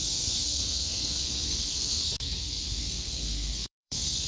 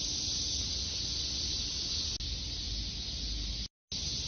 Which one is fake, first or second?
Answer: first